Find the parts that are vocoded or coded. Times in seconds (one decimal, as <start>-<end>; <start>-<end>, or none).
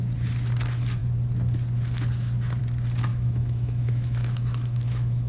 3.1-5.3